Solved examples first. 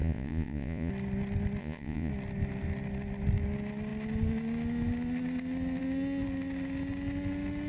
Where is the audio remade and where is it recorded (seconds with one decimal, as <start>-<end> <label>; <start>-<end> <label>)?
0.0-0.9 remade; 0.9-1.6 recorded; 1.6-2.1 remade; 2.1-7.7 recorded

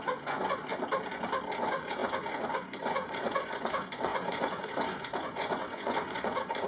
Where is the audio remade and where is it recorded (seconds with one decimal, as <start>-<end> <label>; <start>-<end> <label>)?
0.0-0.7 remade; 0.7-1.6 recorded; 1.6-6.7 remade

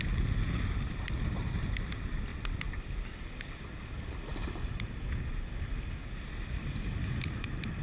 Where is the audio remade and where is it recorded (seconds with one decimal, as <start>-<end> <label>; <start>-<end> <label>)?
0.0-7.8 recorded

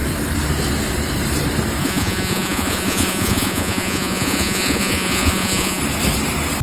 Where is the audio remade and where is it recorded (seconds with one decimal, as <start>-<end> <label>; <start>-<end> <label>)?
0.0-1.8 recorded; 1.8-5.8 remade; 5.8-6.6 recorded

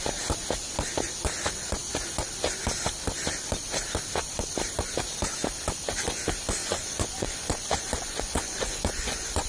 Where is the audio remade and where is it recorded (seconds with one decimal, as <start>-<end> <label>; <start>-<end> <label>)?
0.0-6.6 recorded; 6.6-9.5 remade

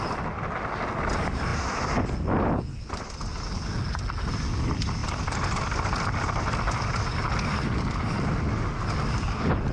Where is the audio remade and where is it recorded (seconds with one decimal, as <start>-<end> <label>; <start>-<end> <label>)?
0.0-9.7 recorded